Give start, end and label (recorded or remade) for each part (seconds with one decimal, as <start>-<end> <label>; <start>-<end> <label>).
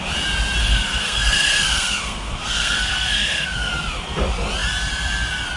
0.0-0.6 recorded; 0.6-3.7 remade; 3.7-5.6 recorded